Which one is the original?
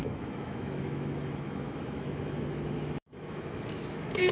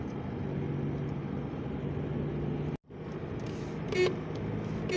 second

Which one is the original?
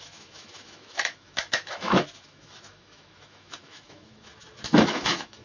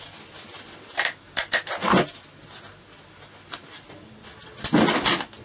second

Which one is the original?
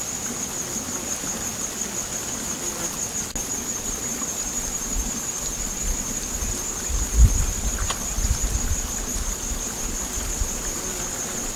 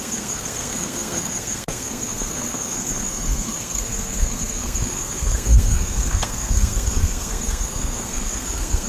first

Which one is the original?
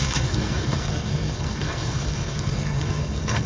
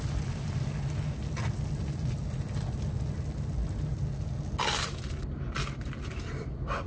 second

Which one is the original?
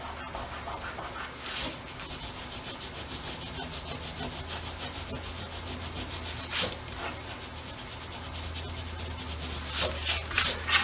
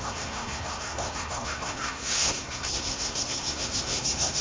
first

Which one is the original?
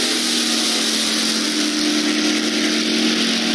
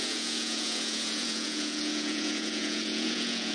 first